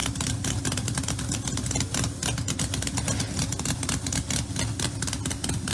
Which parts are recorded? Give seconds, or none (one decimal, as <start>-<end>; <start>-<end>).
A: 0.0-5.7